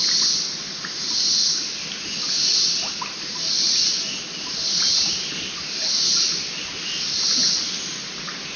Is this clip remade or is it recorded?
recorded